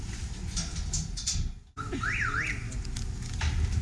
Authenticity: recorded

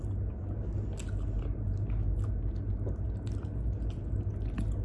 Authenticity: recorded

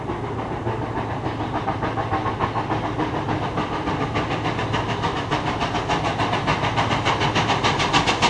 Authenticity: recorded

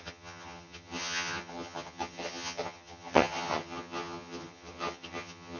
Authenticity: remade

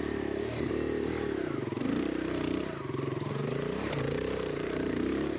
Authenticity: remade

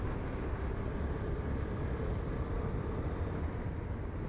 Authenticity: recorded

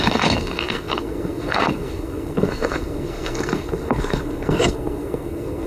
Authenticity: remade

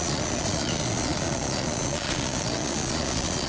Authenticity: remade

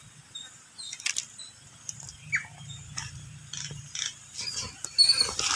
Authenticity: recorded